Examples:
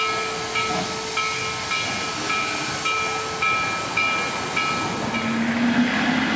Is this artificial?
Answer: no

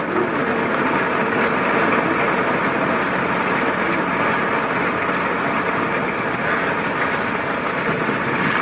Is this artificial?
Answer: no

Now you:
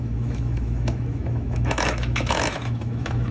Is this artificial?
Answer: yes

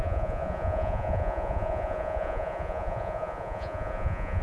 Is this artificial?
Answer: yes